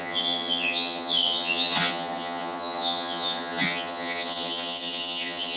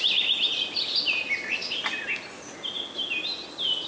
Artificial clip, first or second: first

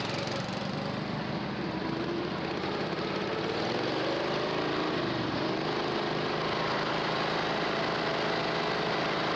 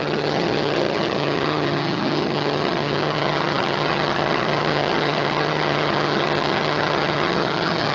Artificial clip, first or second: second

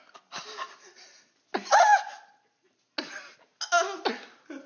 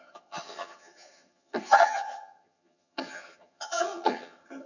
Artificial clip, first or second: second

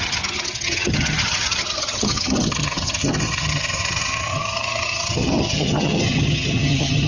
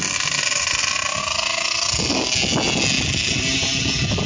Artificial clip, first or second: first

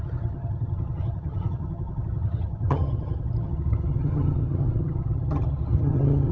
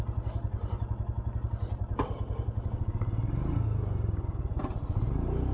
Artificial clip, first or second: first